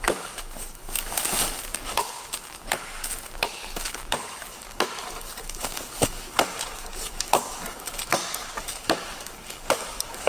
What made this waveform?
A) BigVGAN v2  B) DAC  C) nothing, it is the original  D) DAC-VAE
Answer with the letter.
B